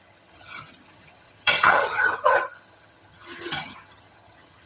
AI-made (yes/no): yes